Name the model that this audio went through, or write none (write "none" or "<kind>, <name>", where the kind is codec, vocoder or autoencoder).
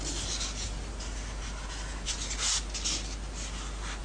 none